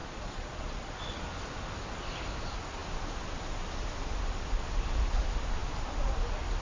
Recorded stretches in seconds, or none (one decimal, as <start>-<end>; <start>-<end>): 1.0-6.6